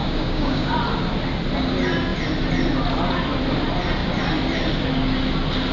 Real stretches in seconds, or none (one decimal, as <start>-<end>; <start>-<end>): 0.7-5.7